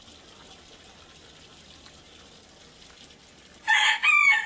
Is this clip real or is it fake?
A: real